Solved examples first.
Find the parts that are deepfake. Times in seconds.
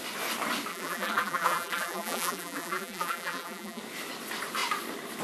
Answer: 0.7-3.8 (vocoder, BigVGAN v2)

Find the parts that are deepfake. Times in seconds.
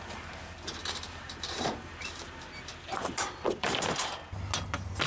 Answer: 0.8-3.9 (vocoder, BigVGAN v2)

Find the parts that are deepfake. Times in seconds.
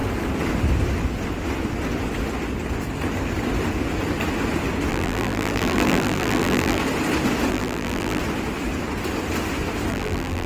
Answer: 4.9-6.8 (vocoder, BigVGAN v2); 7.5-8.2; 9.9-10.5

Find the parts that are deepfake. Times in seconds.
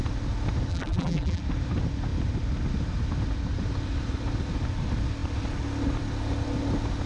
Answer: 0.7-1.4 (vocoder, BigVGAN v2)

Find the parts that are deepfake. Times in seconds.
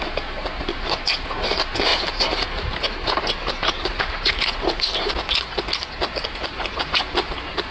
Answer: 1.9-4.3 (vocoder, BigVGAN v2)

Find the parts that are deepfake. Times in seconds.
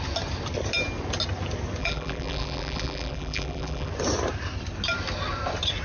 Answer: 1.8-3.9 (vocoder, BigVGAN v2)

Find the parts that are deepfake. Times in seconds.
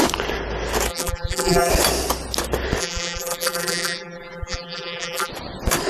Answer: 0.9-1.7 (vocoder, BigVGAN v2); 2.8-5.3